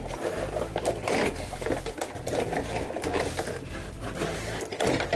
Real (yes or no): yes